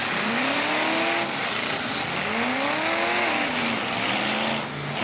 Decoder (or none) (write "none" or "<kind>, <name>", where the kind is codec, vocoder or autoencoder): none